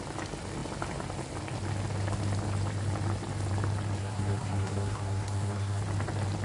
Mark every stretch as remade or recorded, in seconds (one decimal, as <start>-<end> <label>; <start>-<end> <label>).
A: 0.0-4.0 recorded; 4.0-5.8 remade; 5.8-6.4 recorded

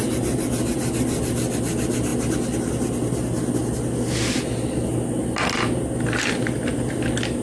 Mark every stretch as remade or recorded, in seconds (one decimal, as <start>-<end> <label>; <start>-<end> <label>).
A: 0.0-7.4 recorded

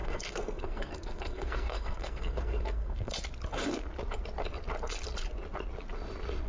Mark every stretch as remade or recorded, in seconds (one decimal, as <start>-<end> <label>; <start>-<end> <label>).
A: 0.0-3.1 remade; 3.1-6.5 recorded